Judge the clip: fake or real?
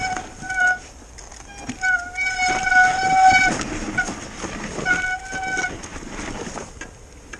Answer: real